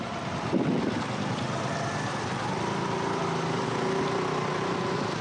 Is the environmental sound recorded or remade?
recorded